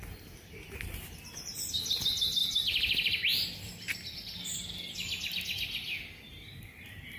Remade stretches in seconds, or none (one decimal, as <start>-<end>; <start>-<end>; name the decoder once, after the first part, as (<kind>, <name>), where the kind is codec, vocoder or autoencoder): none